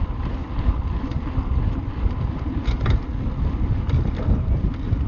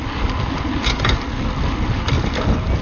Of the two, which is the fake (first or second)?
first